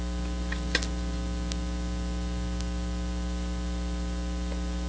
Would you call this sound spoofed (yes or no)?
no